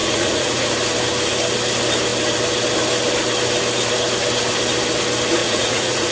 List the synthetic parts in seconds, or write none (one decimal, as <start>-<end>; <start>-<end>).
0.0-0.7; 5.4-6.1